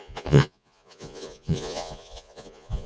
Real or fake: fake